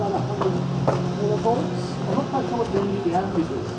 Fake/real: real